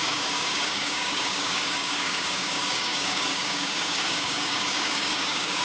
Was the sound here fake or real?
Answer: fake